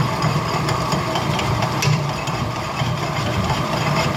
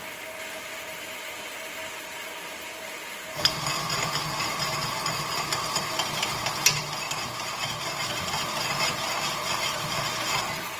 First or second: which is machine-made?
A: first